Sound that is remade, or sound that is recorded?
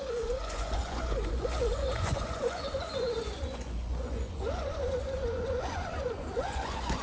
remade